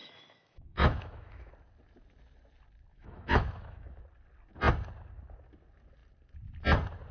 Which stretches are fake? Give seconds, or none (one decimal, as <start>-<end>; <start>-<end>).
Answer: 0.0-1.5; 2.9-4.0